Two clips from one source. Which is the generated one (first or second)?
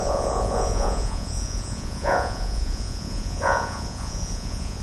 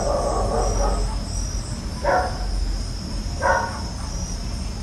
first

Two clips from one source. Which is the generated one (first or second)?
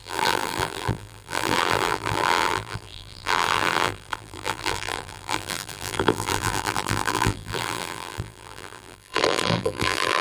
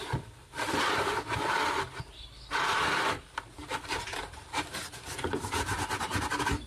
first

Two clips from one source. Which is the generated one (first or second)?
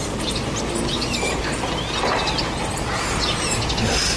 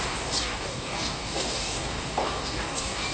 second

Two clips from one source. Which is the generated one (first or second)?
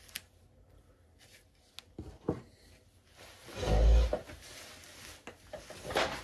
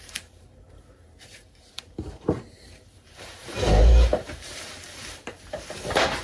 second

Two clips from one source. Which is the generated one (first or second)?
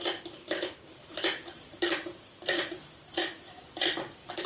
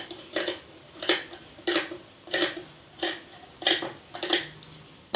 first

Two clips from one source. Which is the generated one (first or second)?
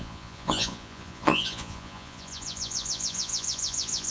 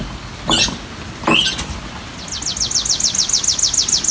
first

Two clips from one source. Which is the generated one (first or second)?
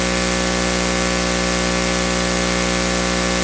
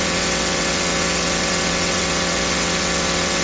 second